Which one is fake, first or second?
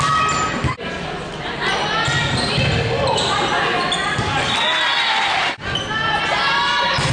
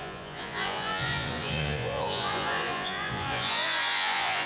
second